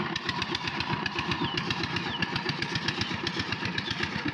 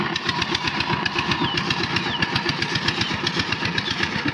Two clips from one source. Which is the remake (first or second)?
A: first